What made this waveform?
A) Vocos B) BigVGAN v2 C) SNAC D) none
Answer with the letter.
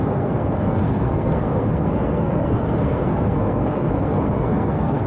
C